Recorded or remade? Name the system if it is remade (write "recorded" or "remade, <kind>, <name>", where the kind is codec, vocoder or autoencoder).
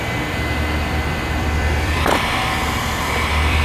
remade, vocoder, BigVGAN v2